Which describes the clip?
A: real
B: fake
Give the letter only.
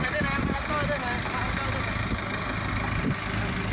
A